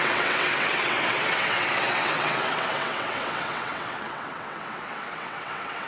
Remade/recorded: remade